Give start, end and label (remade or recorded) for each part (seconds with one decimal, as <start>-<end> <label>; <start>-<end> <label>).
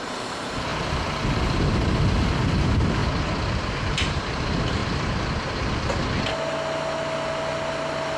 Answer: 0.0-3.0 remade; 3.0-3.6 recorded; 3.6-4.8 remade; 4.8-8.2 recorded